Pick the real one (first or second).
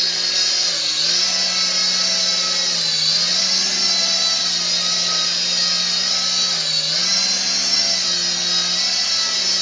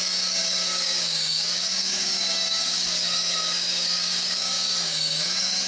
first